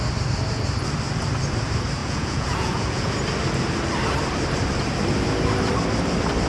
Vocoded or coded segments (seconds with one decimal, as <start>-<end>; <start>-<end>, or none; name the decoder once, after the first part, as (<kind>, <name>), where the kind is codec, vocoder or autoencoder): 2.0-3.1 (vocoder, Vocos)

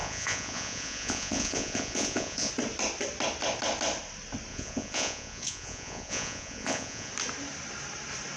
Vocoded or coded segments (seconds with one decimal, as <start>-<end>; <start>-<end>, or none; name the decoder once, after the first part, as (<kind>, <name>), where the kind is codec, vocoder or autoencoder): 0.0-2.5 (vocoder, Vocos); 4.5-7.1

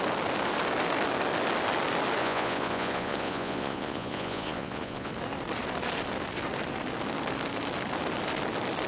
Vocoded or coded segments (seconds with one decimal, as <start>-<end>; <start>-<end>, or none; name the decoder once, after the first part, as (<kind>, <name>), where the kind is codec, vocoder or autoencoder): 2.2-5.1 (vocoder, Vocos)

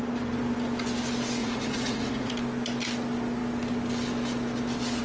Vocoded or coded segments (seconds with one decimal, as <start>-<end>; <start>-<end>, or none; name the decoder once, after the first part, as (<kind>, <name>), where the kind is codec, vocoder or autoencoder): 1.4-2.3 (vocoder, Vocos)